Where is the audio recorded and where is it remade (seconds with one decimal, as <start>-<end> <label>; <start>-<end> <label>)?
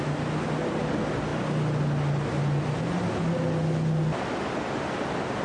0.0-5.4 recorded